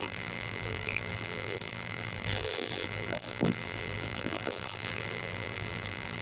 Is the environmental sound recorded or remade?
remade